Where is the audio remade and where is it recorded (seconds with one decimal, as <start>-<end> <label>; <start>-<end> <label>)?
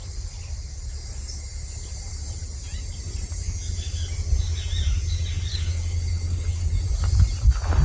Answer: 0.0-5.5 recorded; 5.5-6.7 remade; 6.7-7.8 recorded